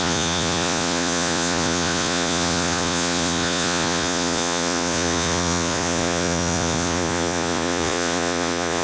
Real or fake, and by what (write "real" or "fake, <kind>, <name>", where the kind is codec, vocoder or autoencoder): fake, vocoder, Vocos